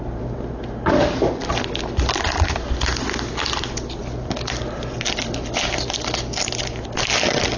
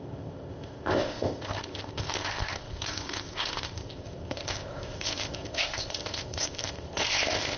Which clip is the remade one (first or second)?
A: second